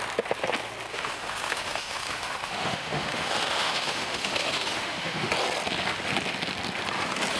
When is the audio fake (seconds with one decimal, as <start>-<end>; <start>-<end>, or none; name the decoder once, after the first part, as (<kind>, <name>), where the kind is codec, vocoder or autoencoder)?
0.9-5.3 (autoencoder, DAC-VAE)